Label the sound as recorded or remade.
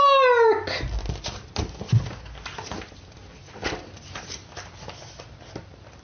recorded